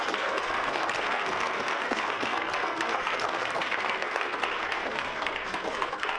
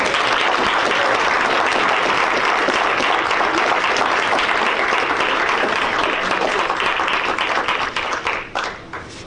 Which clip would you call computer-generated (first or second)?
first